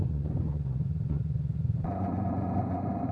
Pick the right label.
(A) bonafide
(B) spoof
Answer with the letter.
B